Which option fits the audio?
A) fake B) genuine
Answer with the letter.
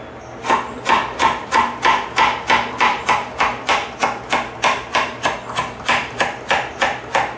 B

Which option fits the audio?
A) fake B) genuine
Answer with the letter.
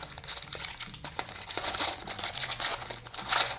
A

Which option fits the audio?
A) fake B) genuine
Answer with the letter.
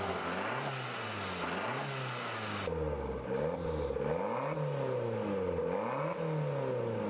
B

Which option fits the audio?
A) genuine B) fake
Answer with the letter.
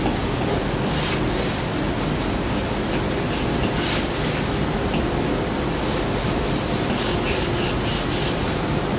A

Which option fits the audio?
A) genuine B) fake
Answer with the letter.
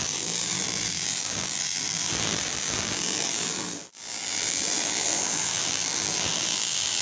B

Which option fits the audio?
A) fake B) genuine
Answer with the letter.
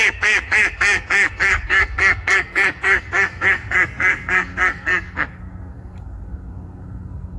A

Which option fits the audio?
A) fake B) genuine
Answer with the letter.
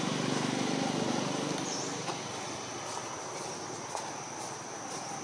B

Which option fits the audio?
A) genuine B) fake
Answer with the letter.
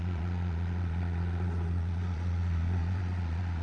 B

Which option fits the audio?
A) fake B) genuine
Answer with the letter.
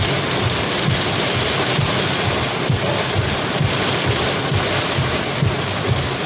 B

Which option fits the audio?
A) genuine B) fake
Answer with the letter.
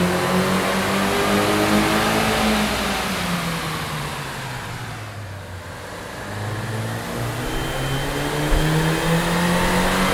A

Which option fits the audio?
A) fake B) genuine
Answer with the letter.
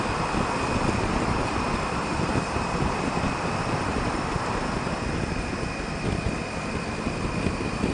A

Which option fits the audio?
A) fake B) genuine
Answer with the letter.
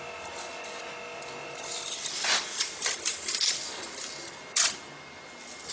B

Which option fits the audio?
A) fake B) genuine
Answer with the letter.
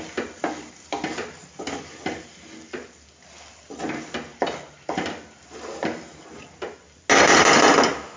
B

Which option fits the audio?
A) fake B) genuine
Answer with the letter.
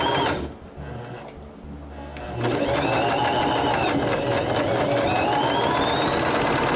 B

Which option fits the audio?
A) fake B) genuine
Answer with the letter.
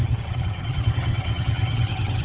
A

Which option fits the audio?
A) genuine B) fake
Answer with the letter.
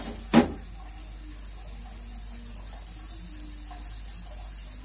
A